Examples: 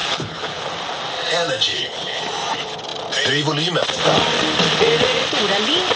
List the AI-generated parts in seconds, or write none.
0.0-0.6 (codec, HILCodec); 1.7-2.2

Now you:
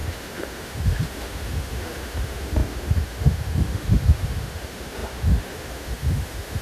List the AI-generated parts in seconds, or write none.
0.0-6.6 (autoencoder, DAC-VAE)